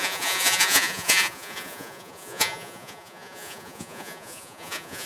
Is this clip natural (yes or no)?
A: no